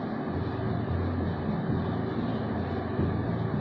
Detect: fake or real real